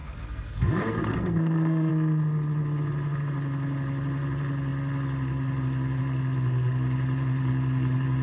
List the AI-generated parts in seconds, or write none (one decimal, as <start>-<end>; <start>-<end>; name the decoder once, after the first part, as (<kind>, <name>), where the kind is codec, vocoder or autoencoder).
0.0-1.9 (codec, SNAC)